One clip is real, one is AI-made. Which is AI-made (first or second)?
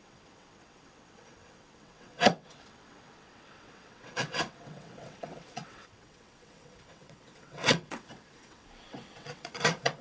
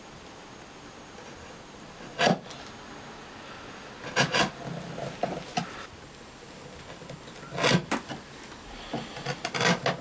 first